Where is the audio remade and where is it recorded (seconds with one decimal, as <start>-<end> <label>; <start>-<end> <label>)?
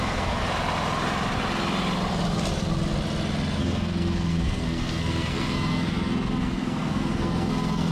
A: 0.0-0.4 remade; 0.4-3.6 recorded; 3.6-7.9 remade